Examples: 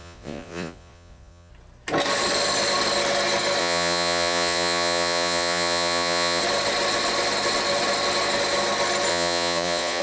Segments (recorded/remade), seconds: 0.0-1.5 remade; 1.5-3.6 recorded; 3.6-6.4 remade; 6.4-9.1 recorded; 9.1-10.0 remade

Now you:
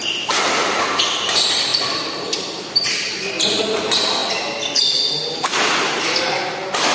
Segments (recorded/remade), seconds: 0.0-1.7 recorded; 1.7-3.6 remade; 3.6-6.9 recorded

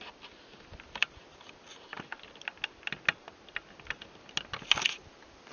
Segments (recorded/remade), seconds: 0.0-5.5 recorded

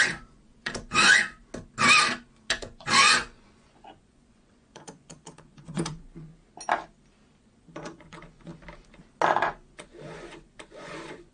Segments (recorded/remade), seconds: 0.0-1.4 remade; 1.4-2.5 recorded; 2.5-6.3 remade; 6.3-7.4 recorded; 7.4-8.5 remade; 8.5-9.3 recorded; 9.3-11.3 remade